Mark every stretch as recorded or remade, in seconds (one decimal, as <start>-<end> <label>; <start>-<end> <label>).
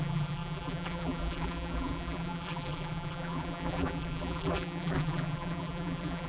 0.0-6.3 remade